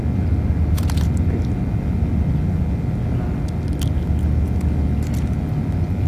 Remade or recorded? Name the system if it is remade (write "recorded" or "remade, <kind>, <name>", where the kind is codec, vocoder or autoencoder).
recorded